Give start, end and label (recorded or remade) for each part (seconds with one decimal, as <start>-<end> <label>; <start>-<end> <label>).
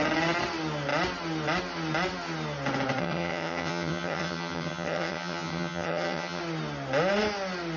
0.0-3.0 recorded; 3.0-6.4 remade; 6.4-7.8 recorded